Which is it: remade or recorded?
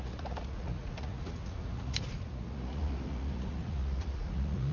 remade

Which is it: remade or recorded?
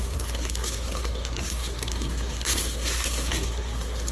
remade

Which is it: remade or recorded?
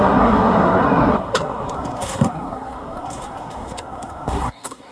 remade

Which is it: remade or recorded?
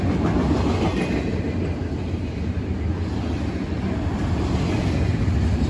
recorded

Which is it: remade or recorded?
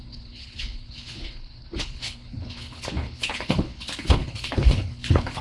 remade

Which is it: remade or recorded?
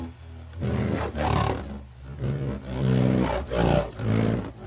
recorded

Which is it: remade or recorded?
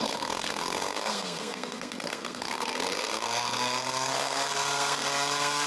remade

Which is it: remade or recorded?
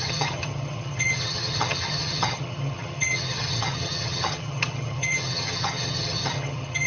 remade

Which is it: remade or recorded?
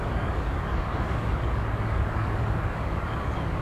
remade